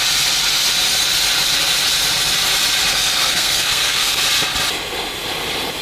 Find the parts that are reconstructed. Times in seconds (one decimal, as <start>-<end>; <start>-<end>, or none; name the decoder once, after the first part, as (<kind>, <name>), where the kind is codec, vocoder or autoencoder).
2.9-4.2 (codec, SNAC)